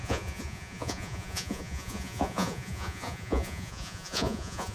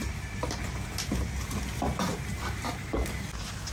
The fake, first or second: first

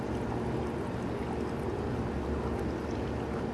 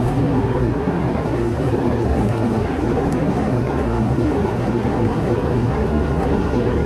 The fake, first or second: second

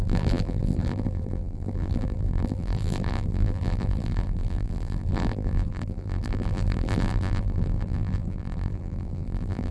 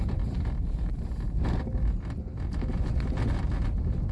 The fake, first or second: first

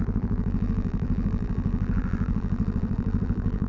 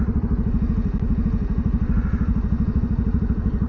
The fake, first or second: first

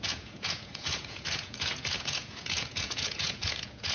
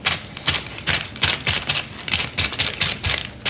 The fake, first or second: first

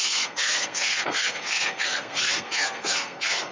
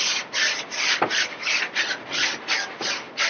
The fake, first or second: first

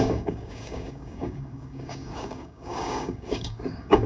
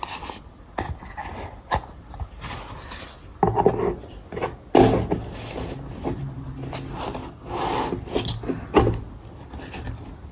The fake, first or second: first